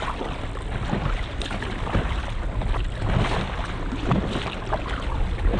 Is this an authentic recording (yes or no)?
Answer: yes